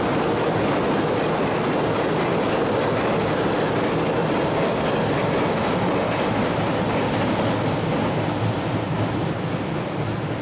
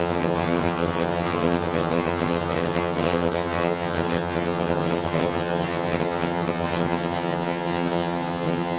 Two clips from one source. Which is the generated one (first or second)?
second